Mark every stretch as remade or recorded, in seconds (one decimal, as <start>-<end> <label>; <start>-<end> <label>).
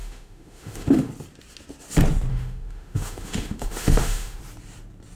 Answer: 0.0-1.1 remade; 1.1-2.3 recorded; 2.3-4.4 remade; 4.4-5.2 recorded